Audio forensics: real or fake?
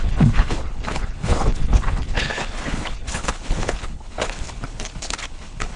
fake